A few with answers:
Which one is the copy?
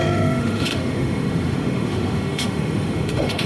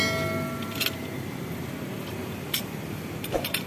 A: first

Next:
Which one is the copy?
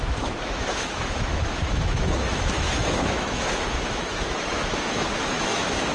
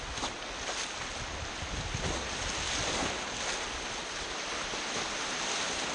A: first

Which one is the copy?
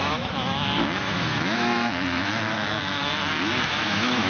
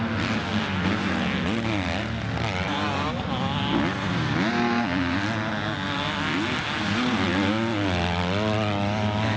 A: first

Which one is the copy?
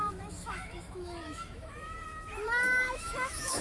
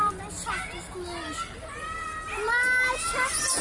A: first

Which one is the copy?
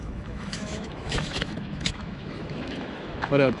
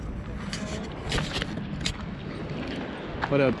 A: first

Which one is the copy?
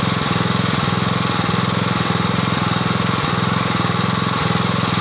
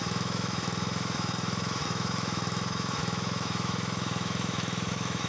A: second